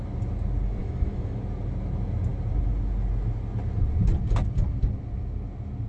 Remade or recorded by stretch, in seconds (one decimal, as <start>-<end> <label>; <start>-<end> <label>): 0.0-0.8 recorded; 0.8-1.4 remade; 1.4-5.9 recorded